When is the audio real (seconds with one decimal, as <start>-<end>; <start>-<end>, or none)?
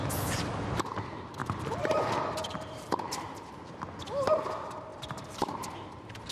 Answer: 0.0-1.4; 3.8-4.9